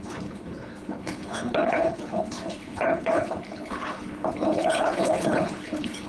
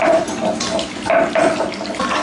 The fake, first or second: first